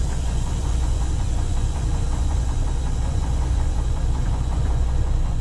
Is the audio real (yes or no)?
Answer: no